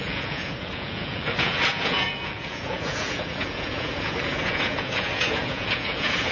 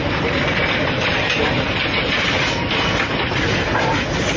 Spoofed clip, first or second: first